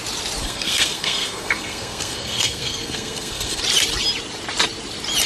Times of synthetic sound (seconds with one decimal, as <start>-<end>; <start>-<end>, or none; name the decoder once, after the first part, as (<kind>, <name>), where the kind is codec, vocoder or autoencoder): 0.4-3.6 (codec, SNAC)